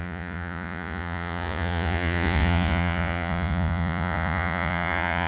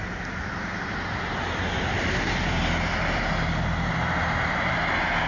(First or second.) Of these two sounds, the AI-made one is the first